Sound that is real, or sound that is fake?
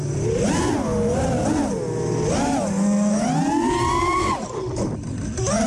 real